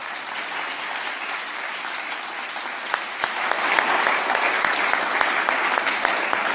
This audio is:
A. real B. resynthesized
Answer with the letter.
A